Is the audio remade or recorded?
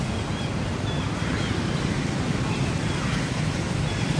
remade